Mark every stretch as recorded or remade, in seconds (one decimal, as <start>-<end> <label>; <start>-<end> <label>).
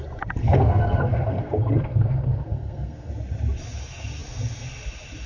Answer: 0.0-0.4 recorded; 0.4-3.1 remade; 3.1-5.3 recorded